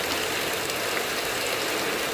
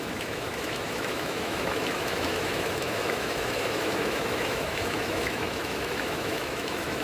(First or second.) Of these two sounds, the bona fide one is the first